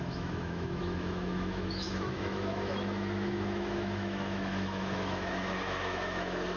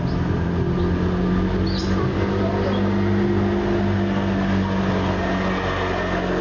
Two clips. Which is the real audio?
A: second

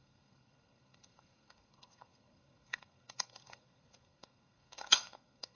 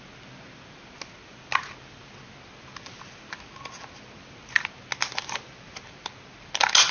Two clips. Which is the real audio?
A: second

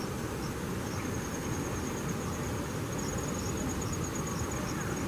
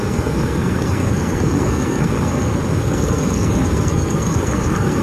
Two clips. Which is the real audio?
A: first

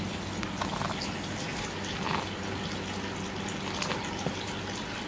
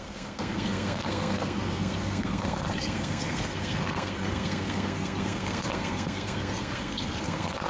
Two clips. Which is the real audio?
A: first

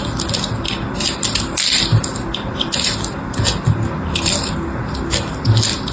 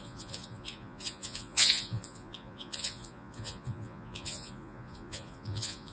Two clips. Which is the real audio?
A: first